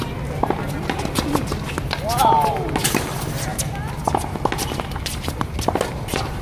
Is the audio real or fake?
real